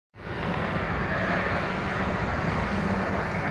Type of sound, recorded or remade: remade